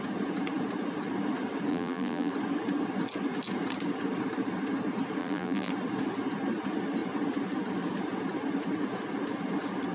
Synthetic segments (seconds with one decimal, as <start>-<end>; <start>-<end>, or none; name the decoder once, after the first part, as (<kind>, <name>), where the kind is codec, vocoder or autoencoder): 1.7-2.3 (vocoder, BigVGAN v2); 5.2-5.7